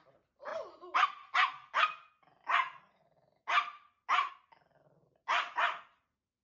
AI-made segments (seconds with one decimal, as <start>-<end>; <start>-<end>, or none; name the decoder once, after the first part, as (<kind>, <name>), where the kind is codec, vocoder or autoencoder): none

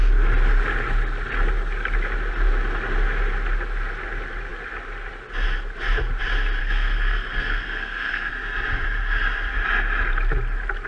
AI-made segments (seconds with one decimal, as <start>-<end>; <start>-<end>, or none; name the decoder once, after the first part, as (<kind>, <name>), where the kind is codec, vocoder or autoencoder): 6.6-8.3 (codec, SNAC)

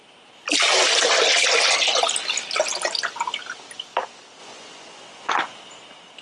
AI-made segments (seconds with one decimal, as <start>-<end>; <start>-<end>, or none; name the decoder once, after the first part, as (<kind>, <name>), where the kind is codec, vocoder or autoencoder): 4.4-5.3 (vocoder, Vocos)

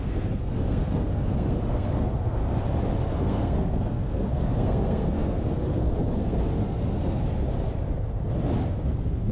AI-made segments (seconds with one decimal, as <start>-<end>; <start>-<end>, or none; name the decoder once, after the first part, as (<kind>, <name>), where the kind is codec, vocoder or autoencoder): 0.0-2.4 (codec, SNAC); 3.1-7.4; 8.8-9.3

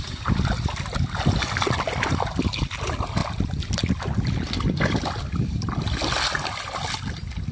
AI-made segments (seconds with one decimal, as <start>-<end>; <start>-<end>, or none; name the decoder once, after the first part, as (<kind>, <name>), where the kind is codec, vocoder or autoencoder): none

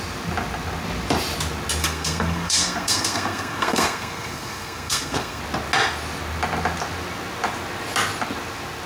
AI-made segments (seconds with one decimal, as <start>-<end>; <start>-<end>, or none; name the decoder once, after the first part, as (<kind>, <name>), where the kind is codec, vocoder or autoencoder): 1.8-5.4 (codec, SNAC)

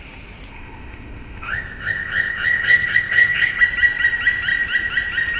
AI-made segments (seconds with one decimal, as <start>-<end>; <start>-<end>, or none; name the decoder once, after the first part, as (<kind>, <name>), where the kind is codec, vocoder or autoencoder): 0.5-3.6 (codec, ZipCodec)

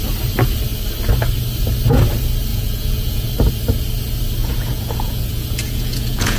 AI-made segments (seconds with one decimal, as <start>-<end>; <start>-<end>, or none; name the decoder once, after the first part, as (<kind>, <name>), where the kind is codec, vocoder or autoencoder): 2.5-3.3 (vocoder, Vocos); 4.4-6.4